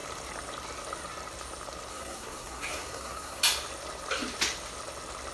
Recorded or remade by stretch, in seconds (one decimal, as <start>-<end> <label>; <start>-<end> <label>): 0.0-1.9 recorded; 1.9-3.4 remade; 3.4-5.3 recorded